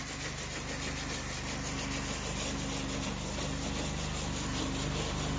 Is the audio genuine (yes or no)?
yes